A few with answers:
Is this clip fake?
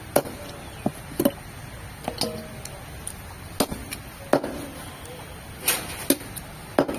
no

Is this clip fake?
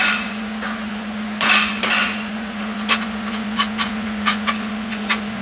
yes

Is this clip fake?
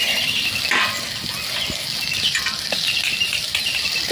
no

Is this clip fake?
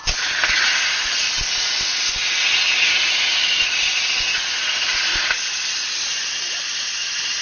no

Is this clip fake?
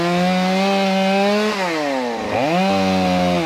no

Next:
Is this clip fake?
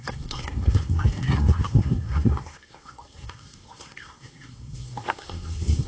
yes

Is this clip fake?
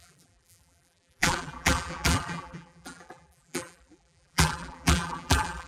yes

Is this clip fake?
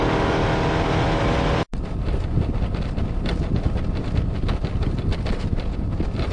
no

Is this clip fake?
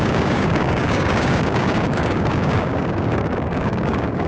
yes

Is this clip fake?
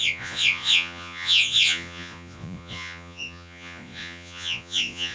yes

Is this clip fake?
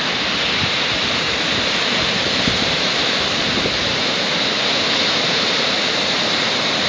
yes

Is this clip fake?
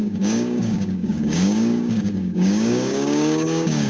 yes